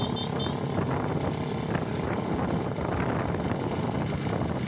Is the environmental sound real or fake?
real